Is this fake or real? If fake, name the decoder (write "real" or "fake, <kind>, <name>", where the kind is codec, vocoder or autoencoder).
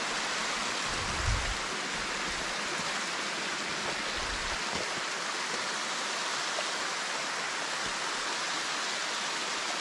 real